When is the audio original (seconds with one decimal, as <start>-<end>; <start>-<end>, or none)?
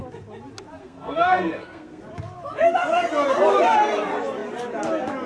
0.0-0.8; 2.0-5.3